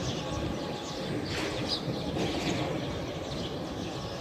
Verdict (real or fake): real